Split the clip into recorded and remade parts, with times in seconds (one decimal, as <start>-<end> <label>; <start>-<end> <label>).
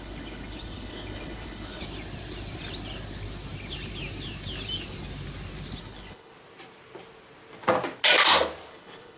0.0-1.8 remade; 1.8-5.8 recorded; 5.8-6.3 remade; 6.3-8.7 recorded; 8.7-9.2 remade